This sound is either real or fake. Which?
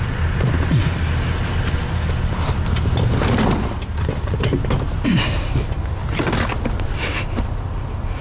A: real